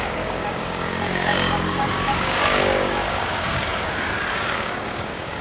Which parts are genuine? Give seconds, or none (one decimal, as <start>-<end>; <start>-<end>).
none

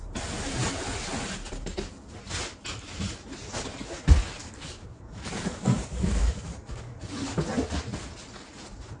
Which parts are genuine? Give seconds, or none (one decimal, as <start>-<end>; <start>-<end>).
0.0-4.4; 7.4-9.0

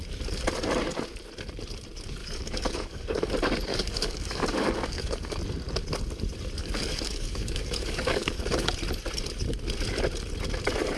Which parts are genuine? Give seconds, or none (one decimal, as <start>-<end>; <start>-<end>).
0.0-2.2; 3.3-3.7; 5.4-6.6; 8.7-11.0

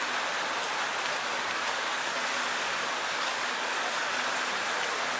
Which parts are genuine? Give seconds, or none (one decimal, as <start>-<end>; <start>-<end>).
0.0-1.3; 4.3-5.2

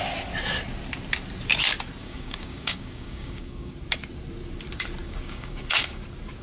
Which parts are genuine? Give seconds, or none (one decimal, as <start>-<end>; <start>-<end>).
0.0-2.0; 3.7-5.0; 6.0-6.4

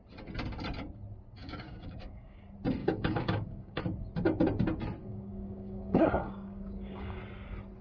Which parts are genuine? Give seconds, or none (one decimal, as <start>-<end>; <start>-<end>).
0.0-1.4; 2.4-2.8; 3.8-5.0; 7.2-7.8

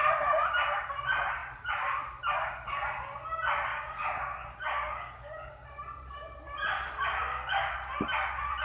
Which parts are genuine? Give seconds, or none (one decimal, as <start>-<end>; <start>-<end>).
0.0-3.7; 5.5-7.2; 7.7-8.6